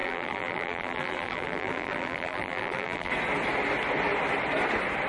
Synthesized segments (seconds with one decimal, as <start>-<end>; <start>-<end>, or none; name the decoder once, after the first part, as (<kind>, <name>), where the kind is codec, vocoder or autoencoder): 0.0-3.1 (vocoder, BigVGAN v2)